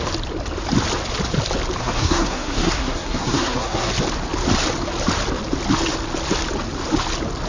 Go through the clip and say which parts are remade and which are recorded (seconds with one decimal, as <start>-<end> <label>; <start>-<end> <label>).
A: 0.0-1.8 recorded; 1.8-3.9 remade; 3.9-7.5 recorded